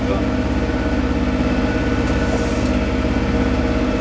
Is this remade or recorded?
recorded